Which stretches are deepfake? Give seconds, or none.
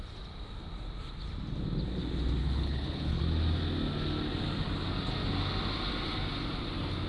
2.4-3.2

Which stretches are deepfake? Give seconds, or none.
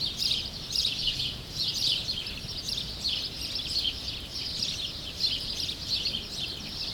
0.8-1.7